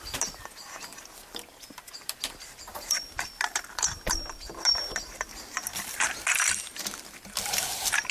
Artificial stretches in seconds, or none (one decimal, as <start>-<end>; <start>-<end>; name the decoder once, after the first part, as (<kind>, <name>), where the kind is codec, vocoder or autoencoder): 2.7-3.3 (vocoder, BigVGAN v2)